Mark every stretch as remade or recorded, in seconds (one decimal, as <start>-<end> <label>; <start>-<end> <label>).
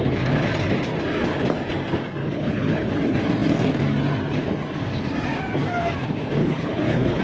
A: 0.0-2.2 recorded; 2.2-2.9 remade; 2.9-6.4 recorded; 6.4-7.2 remade